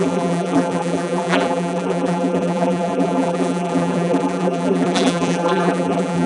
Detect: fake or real fake